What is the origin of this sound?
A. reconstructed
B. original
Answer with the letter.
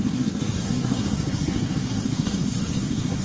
A